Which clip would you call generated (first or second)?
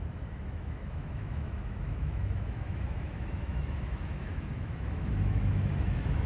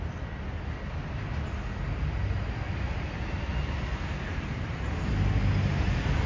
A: first